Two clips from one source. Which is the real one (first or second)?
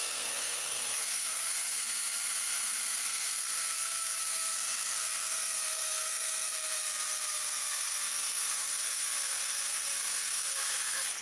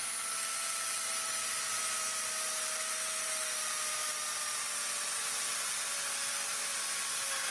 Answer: second